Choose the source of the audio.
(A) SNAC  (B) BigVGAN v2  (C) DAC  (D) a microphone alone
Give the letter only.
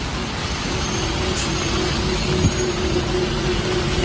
D